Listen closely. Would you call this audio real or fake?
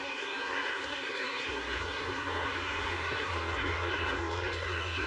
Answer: fake